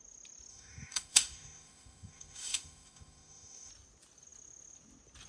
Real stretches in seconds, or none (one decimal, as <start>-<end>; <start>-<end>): 0.0-0.5; 3.7-5.3

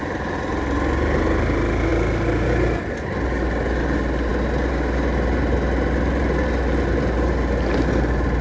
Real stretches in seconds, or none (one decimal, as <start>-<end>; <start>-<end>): 0.0-8.4

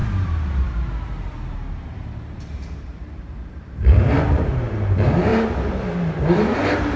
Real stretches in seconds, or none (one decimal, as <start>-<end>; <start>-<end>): none

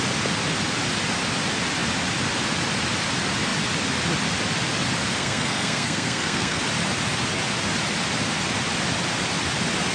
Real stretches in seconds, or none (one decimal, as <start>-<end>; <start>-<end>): 0.0-5.2; 6.6-9.9

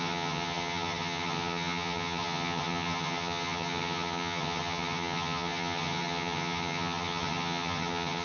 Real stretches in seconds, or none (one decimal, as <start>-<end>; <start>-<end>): none